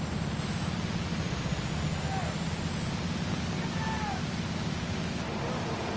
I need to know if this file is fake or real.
real